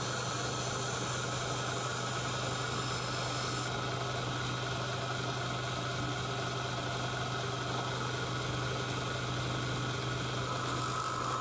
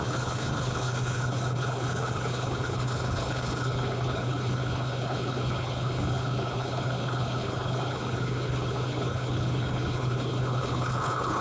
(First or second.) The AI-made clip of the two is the second